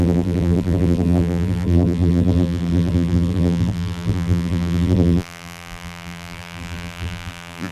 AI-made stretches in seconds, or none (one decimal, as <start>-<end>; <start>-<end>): 0.0-7.7